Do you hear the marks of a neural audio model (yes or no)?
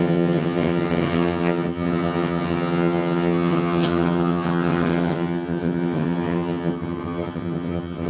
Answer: yes